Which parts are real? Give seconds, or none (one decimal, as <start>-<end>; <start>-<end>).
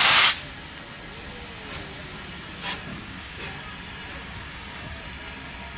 0.0-2.9; 3.4-4.2; 5.0-5.8